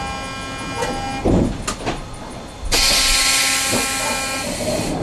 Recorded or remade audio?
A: recorded